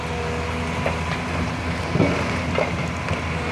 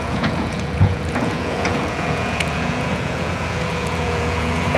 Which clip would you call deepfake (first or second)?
second